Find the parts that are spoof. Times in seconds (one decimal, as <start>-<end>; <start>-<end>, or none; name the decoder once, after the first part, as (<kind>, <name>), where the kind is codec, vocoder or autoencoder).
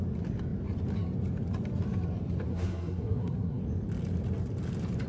2.5-3.6 (codec, SNAC)